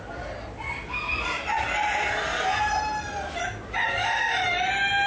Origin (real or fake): real